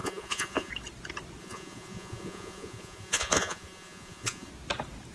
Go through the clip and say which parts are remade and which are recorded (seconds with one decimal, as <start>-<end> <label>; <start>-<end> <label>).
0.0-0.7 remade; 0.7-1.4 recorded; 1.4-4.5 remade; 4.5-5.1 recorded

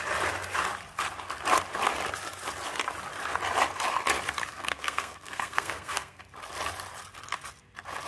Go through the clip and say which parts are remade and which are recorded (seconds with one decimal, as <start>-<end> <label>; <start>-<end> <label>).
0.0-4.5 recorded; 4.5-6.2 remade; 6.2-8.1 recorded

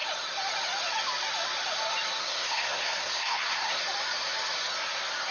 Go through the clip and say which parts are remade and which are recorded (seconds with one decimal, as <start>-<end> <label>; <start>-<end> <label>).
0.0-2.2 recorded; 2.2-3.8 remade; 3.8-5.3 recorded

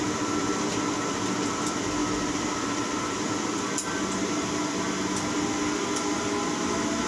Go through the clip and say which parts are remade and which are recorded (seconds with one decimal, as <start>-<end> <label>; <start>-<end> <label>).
0.0-7.1 recorded

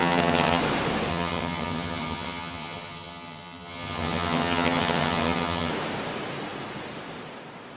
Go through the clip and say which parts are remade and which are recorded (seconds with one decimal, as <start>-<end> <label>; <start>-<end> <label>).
0.0-0.6 remade; 0.6-1.1 recorded; 1.1-5.7 remade; 5.7-7.8 recorded